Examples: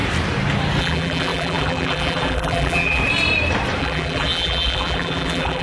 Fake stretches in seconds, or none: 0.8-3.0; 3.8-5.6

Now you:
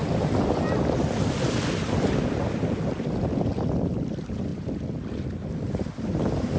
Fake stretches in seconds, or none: none